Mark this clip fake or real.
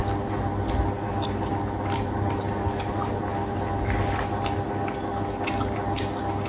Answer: real